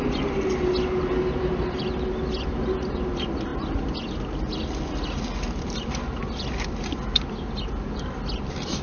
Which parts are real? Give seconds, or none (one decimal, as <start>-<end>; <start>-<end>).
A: 0.0-8.8